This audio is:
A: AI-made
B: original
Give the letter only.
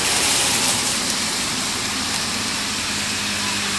B